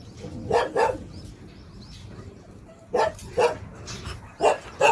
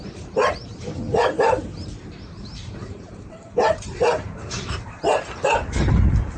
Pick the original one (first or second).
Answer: first